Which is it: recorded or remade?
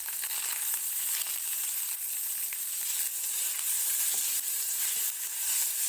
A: recorded